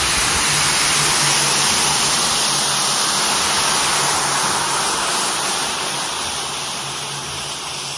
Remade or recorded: recorded